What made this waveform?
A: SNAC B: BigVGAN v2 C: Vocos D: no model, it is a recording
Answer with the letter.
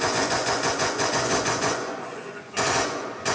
C